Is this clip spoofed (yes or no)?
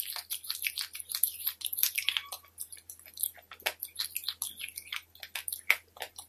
no